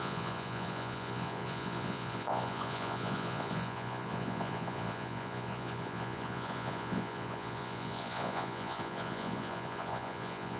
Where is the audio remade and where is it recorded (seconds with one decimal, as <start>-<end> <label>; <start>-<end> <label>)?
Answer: 0.0-10.6 remade